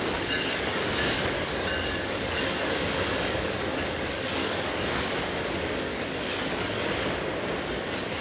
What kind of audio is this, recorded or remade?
remade